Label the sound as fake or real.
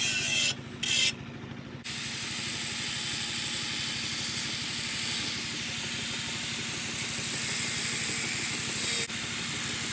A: real